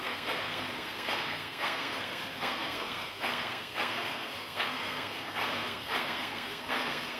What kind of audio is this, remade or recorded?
remade